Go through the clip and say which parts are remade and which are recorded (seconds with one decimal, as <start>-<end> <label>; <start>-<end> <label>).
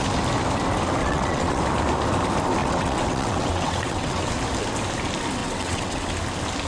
0.0-1.0 recorded; 1.0-1.6 remade; 1.6-2.6 recorded; 2.6-4.3 remade; 4.3-5.4 recorded; 5.4-6.1 remade; 6.1-6.7 recorded